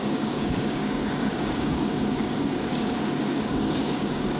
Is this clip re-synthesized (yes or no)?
yes